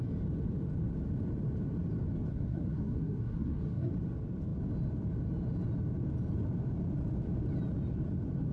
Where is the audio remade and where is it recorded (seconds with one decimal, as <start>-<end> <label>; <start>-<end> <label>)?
0.0-2.3 recorded; 2.3-3.9 remade; 3.9-8.5 recorded